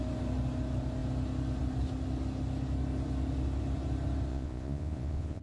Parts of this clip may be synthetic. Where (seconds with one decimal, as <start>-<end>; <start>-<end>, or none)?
4.3-5.4

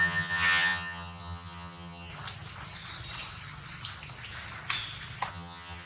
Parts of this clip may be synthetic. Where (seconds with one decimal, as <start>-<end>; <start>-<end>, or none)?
0.0-2.1; 5.3-5.9

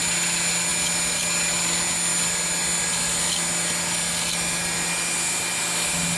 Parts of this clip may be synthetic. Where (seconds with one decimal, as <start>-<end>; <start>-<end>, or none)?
none

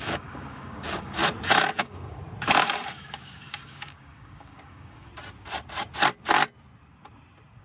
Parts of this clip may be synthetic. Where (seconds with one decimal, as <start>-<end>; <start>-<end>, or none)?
0.0-1.2; 1.8-2.2; 2.9-5.1

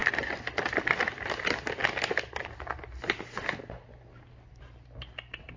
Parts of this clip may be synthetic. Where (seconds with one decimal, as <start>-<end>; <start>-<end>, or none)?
none

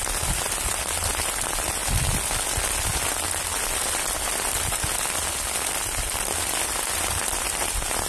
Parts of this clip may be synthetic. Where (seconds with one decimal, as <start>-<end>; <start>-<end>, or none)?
none

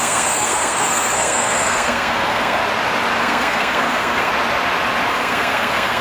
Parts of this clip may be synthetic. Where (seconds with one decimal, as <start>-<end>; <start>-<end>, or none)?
0.0-2.6; 3.2-4.3; 5.1-6.0